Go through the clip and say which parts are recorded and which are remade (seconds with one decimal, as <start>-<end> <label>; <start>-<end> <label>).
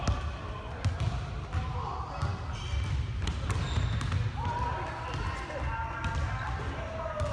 0.0-7.3 recorded